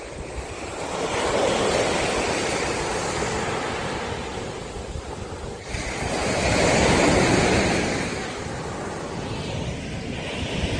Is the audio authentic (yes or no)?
yes